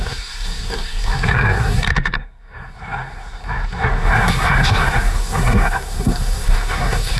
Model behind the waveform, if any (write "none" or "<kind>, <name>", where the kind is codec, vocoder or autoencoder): codec, SNAC